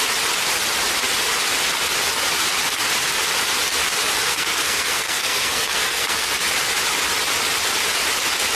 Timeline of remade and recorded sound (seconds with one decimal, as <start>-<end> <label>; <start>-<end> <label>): 0.0-4.2 recorded; 4.2-6.3 remade; 6.3-8.6 recorded